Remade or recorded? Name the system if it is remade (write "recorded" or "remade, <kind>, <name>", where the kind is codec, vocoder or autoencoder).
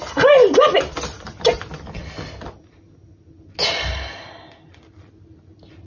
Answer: recorded